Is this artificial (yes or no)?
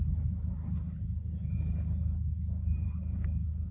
no